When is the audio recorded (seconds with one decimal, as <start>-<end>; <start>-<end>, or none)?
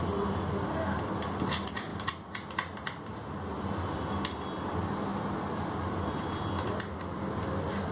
0.0-7.9